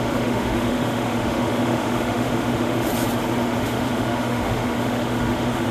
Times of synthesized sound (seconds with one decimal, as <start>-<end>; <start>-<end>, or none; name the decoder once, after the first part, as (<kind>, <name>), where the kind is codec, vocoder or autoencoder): 0.0-2.9 (autoencoder, DAC-VAE); 3.6-5.7